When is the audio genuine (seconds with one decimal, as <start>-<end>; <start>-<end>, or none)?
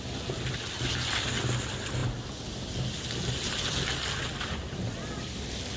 0.0-5.8